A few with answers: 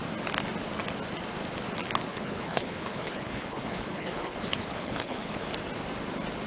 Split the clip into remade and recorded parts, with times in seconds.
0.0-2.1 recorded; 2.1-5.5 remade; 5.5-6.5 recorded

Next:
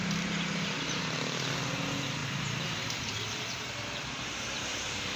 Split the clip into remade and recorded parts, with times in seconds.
0.0-1.0 remade; 1.0-2.2 recorded; 2.2-3.6 remade; 3.6-5.2 recorded

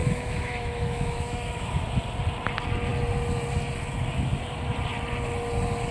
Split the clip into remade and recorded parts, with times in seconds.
0.0-1.7 remade; 1.7-5.9 recorded

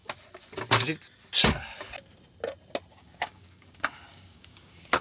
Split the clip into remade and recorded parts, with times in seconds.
0.0-2.9 recorded; 2.9-5.0 remade

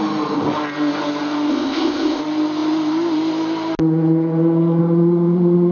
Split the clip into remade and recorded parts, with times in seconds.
0.0-1.5 recorded; 1.5-2.2 remade; 2.2-5.7 recorded

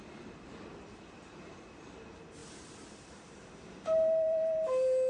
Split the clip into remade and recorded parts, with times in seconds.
0.0-2.4 recorded; 2.4-5.1 remade

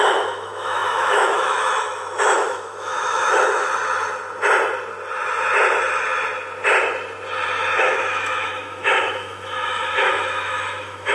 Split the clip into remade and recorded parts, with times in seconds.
0.0-3.7 remade; 3.7-7.8 recorded; 7.8-11.1 remade